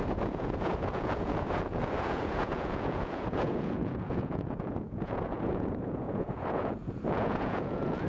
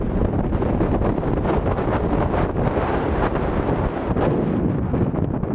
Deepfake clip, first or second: first